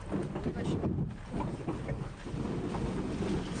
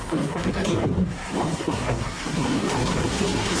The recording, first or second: first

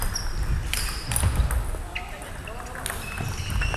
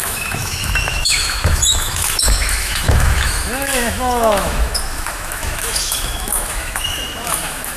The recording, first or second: first